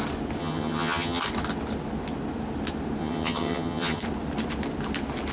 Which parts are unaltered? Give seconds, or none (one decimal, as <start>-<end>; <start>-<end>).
0.0-0.4; 1.2-3.0; 4.0-5.3